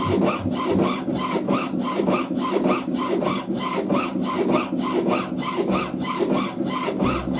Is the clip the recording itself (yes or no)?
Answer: yes